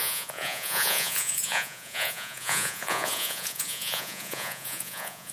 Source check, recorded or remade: remade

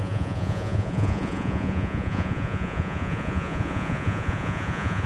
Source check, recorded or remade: remade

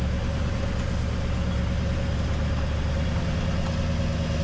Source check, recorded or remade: recorded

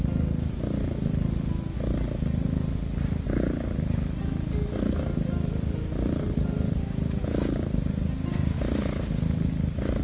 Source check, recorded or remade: recorded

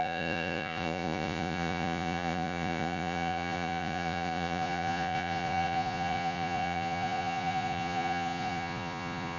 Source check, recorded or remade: remade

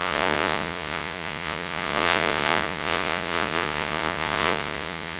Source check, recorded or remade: remade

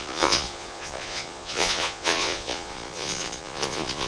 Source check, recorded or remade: remade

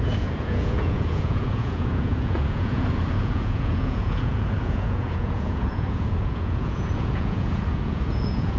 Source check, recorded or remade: remade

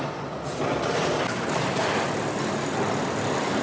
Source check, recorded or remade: recorded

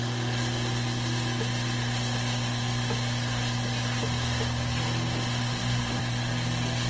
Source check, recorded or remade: recorded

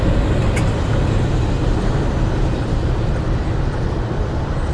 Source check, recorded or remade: recorded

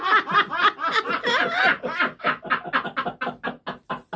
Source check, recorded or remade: recorded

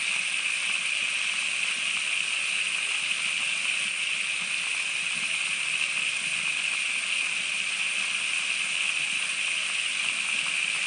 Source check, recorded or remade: recorded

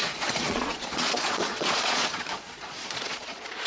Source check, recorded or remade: remade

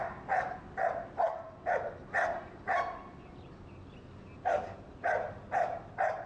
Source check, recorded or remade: recorded